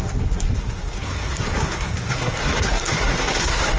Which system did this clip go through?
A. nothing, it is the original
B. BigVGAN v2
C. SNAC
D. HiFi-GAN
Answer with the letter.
C